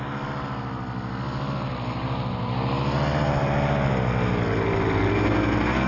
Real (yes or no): yes